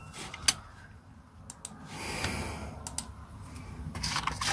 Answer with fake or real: real